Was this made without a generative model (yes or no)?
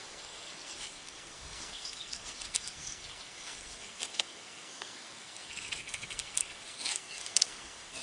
no